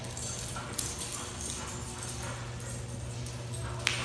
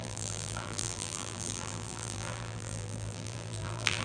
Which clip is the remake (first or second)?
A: second